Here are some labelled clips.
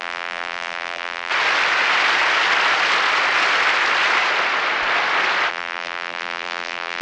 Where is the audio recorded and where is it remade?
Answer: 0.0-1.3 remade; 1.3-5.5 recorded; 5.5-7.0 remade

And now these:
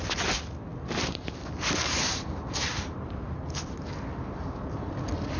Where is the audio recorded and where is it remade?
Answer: 0.0-0.7 recorded; 0.7-3.9 remade; 3.9-5.4 recorded